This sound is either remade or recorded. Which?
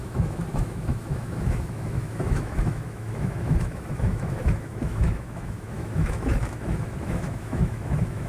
remade